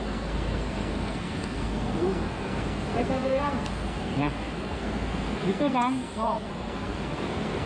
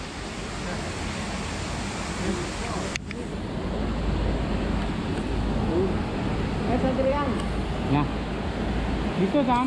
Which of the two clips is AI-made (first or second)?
first